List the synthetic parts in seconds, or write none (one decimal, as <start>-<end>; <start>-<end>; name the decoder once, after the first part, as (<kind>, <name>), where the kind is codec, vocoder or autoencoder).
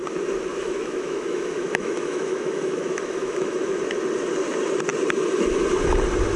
0.5-3.8 (autoencoder, DAC-VAE)